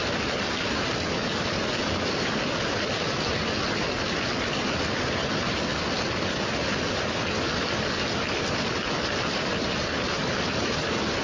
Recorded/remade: recorded